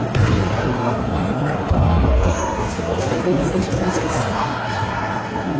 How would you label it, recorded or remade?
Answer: remade